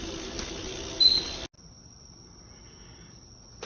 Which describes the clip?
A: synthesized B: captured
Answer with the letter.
B